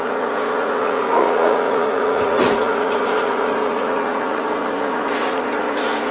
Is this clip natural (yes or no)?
no